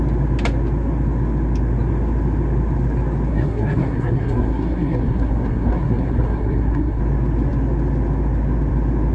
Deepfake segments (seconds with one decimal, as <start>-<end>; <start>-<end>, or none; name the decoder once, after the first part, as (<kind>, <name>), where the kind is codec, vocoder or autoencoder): 3.3-7.0 (codec, SNAC)